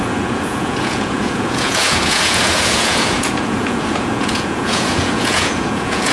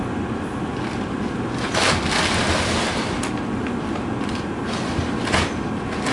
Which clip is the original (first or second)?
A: second